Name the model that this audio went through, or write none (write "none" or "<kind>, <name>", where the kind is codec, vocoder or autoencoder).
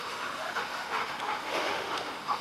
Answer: autoencoder, DAC-VAE